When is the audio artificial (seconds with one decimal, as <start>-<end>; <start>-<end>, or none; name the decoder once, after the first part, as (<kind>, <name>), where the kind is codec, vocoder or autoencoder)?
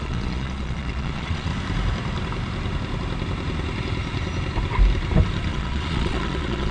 0.0-1.5 (vocoder, Vocos); 5.5-6.7